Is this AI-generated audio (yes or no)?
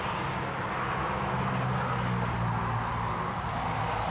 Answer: no